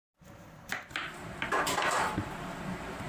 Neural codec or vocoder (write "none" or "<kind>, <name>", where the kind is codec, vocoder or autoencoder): vocoder, BigVGAN v2